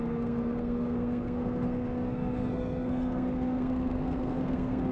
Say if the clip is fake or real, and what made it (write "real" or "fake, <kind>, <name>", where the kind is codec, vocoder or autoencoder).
fake, codec, SNAC